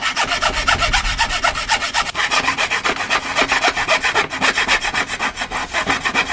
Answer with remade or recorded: recorded